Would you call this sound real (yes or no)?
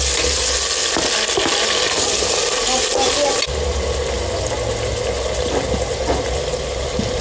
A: yes